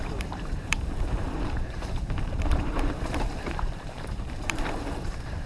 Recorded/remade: remade